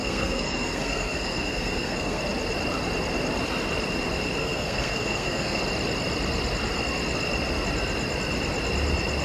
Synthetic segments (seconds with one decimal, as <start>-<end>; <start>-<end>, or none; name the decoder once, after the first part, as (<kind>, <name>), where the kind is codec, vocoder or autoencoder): 0.0-2.2 (codec, SNAC); 4.4-5.6